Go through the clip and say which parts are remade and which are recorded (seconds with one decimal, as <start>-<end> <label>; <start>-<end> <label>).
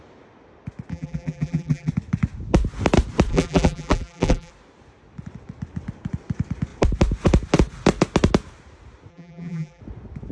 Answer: 0.0-0.9 recorded; 0.9-1.9 remade; 1.9-3.3 recorded; 3.3-4.5 remade; 4.5-9.1 recorded; 9.1-9.8 remade; 9.8-10.3 recorded